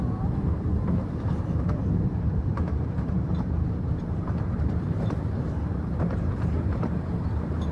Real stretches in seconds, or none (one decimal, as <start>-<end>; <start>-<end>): 0.0-0.7; 1.8-2.5; 7.1-7.7